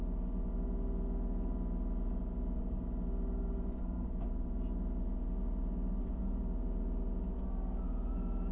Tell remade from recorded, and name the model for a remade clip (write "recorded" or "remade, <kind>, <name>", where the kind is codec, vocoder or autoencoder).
recorded